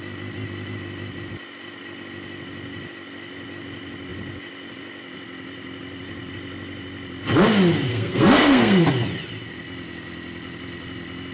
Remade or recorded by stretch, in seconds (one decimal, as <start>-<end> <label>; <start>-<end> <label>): 0.0-7.9 recorded; 7.9-8.8 remade; 8.8-11.3 recorded